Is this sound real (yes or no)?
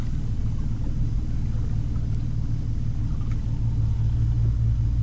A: yes